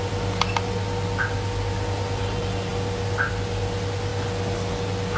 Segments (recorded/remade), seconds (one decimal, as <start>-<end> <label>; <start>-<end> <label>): 0.0-5.2 recorded